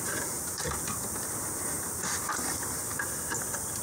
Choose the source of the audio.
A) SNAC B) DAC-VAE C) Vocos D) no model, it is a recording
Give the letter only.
D